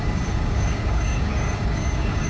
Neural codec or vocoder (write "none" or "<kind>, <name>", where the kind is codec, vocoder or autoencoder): codec, DAC